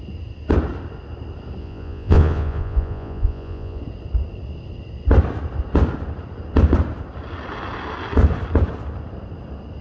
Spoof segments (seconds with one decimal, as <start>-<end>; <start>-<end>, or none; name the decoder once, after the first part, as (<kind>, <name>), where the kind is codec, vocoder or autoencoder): 1.6-3.8 (vocoder, Vocos)